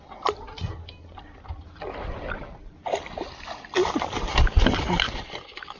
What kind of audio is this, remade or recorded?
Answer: recorded